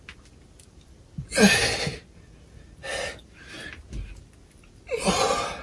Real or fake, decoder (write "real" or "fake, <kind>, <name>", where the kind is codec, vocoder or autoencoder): real